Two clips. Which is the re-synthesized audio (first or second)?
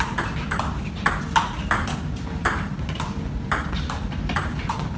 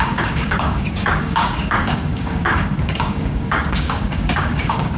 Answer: second